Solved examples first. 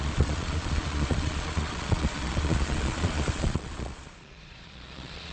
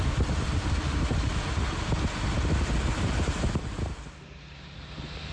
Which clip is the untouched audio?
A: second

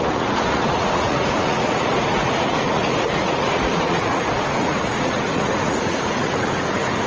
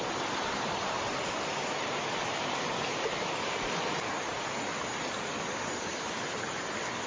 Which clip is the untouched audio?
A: second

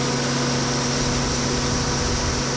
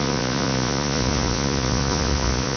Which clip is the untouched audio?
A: first